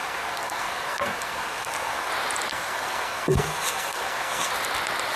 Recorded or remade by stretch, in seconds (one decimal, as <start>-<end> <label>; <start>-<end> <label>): 0.0-2.1 remade; 2.1-2.5 recorded; 2.5-4.5 remade; 4.5-5.2 recorded